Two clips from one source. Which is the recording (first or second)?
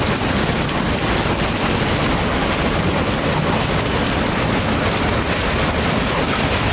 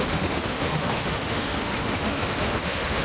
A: first